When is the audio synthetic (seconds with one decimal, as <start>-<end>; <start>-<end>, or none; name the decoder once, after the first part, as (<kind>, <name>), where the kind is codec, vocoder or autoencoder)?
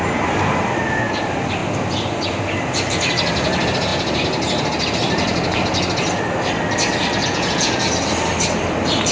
7.2-7.7 (vocoder, Vocos)